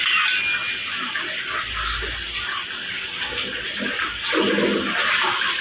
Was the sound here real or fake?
real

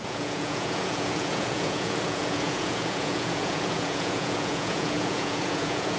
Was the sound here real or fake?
fake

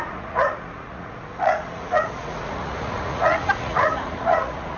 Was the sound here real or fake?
fake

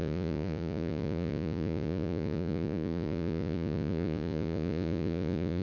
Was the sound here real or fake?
fake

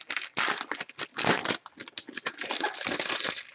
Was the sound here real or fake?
real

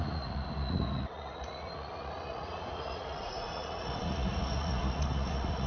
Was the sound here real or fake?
fake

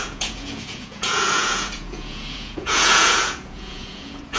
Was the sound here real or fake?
fake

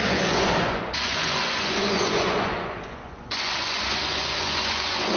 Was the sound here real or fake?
fake